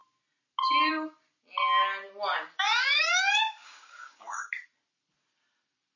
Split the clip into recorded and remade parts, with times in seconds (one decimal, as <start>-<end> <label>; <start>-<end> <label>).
0.0-2.3 recorded; 2.3-4.5 remade; 4.5-6.0 recorded